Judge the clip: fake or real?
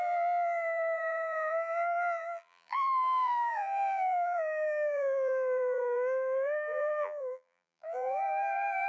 fake